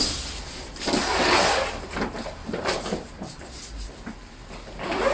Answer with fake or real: real